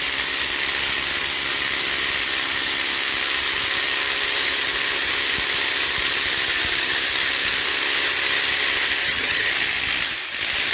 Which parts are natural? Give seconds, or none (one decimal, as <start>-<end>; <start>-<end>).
0.0-9.0; 9.5-10.7